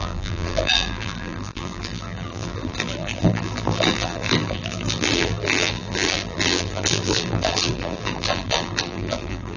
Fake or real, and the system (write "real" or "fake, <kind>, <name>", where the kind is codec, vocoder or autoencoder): fake, vocoder, BigVGAN v2